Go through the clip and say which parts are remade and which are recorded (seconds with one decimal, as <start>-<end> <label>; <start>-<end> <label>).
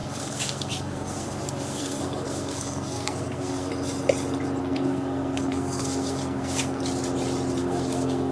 0.0-3.7 remade; 3.7-4.6 recorded; 4.6-6.8 remade; 6.8-7.6 recorded; 7.6-8.3 remade